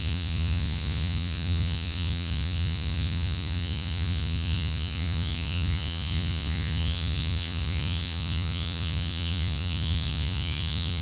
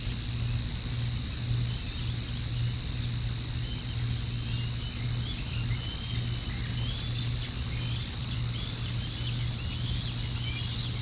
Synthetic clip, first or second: first